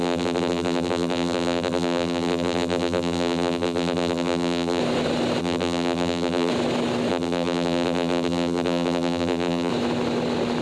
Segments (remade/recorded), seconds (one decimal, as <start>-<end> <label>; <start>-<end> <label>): 0.0-4.8 remade; 4.8-5.4 recorded; 5.4-6.5 remade; 6.5-7.1 recorded; 7.1-9.7 remade; 9.7-10.6 recorded